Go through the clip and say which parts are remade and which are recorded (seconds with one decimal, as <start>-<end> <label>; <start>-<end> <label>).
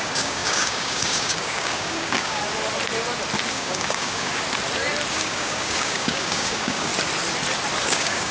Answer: 0.0-2.4 remade; 2.4-3.5 recorded; 3.5-4.3 remade; 4.3-5.1 recorded; 5.1-6.9 remade; 6.9-7.8 recorded; 7.8-8.3 remade